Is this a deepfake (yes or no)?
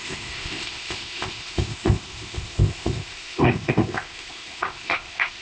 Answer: yes